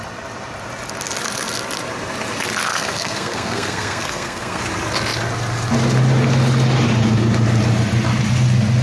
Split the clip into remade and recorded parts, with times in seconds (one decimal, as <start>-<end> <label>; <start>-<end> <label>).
0.0-2.7 recorded; 2.7-4.6 remade; 4.6-8.8 recorded